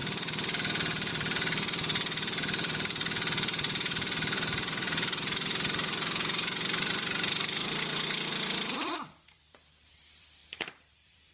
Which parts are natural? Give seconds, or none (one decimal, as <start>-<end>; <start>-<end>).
0.0-1.1; 10.4-10.9